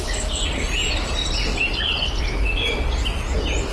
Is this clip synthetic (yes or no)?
no